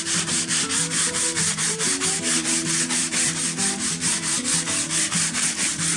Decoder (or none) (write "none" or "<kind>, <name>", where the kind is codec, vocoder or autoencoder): vocoder, BigVGAN v2